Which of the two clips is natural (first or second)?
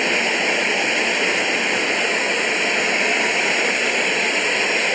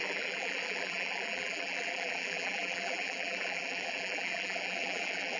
first